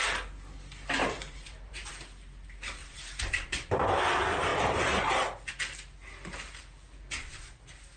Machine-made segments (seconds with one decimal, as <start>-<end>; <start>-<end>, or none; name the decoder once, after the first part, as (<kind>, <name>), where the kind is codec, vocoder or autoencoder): 1.0-1.9 (vocoder, BigVGAN v2); 2.8-4.0